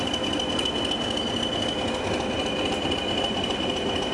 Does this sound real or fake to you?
real